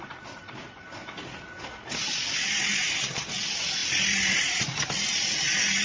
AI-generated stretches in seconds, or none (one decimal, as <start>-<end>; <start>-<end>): none

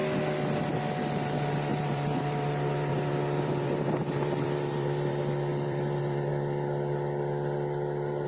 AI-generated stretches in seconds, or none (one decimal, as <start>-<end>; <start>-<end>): 1.7-5.1; 5.5-6.3

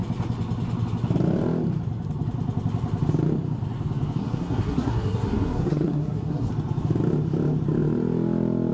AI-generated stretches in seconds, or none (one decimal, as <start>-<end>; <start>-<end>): 4.2-6.5

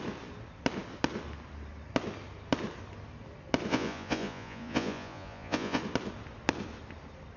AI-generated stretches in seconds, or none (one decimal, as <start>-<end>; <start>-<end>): 3.7-5.8

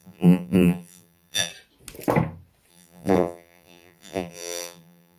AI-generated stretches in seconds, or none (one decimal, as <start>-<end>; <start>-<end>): 0.0-1.5; 2.7-5.2

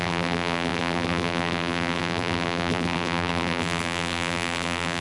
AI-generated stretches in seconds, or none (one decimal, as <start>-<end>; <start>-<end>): 0.0-5.0

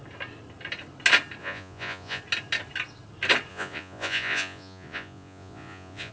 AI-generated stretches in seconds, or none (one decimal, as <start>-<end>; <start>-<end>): 1.4-2.2; 3.5-6.1

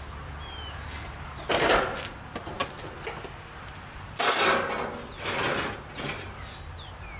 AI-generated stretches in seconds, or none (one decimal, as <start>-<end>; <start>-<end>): none